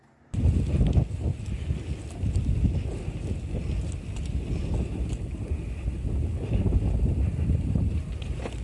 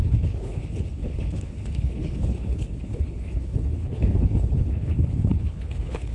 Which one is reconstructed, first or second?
second